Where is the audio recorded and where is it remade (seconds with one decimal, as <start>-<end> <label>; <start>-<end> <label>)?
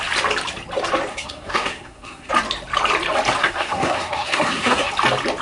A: 0.0-1.1 recorded; 1.1-2.3 remade; 2.3-3.4 recorded; 3.4-4.9 remade; 4.9-5.4 recorded